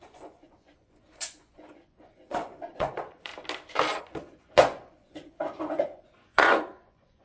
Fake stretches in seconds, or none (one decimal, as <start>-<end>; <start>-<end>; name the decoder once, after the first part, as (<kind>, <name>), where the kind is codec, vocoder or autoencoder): 0.0-3.3 (vocoder, Vocos); 4.0-7.2